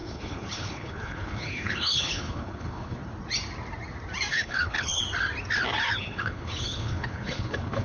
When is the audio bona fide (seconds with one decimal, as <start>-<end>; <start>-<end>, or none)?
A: 3.0-4.3; 5.0-6.0